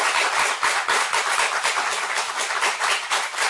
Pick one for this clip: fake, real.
real